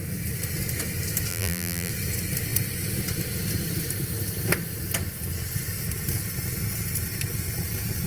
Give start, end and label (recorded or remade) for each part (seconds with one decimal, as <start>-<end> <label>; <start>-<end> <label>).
0.0-1.3 recorded; 1.3-1.9 remade; 1.9-8.1 recorded